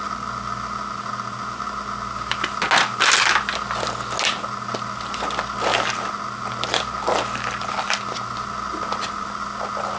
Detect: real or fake real